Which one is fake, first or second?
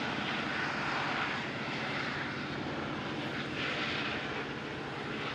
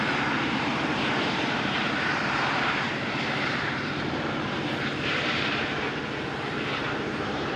second